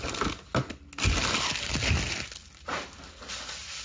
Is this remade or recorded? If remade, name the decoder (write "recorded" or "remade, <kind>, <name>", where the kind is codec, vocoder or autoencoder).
recorded